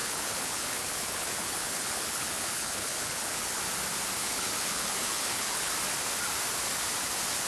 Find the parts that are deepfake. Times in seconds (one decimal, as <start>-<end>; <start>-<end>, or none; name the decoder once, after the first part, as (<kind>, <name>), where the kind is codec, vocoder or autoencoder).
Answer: 0.0-3.6 (codec, HILCodec); 4.2-5.7